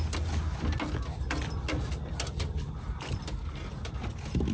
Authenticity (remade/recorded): recorded